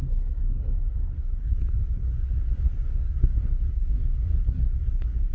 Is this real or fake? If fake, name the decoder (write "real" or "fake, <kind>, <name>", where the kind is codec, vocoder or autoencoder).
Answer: fake, codec, SNAC